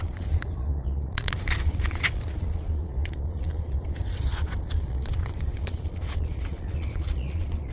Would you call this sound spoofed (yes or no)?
yes